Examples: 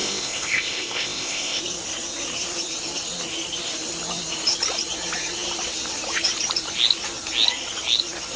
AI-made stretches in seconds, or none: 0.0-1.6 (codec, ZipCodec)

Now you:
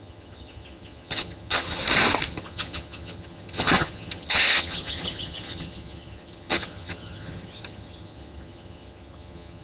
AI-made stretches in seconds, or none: 0.0-1.8 (vocoder, HiFi-GAN); 2.3-9.6

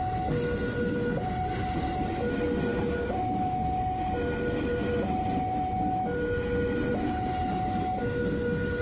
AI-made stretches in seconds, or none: none

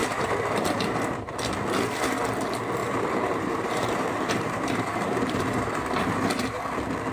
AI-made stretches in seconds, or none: 0.0-1.3 (vocoder, BigVGAN v2); 2.8-6.6

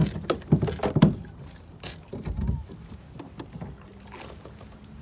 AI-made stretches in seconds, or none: none